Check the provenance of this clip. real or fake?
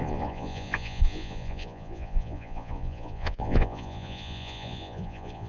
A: fake